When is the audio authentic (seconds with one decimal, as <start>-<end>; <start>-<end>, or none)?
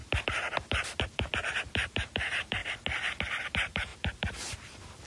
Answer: 0.0-1.0; 2.6-3.5